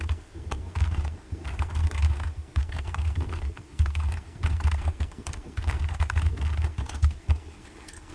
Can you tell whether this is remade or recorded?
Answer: remade